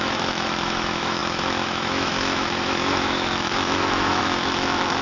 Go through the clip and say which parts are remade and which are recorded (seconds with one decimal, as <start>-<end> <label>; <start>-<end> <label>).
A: 0.0-5.0 remade